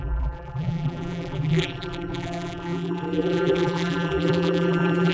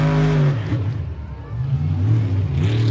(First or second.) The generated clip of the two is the first